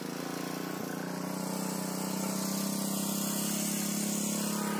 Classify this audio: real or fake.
real